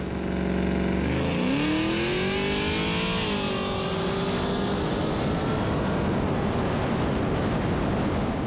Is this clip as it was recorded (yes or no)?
yes